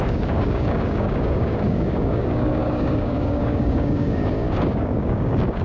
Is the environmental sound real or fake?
fake